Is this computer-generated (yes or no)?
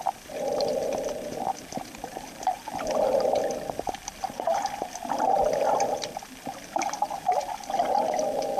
yes